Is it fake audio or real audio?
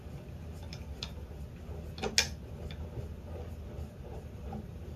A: real